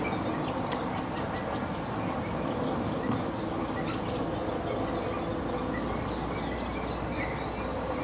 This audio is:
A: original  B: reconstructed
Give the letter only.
A